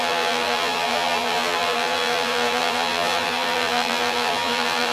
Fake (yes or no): yes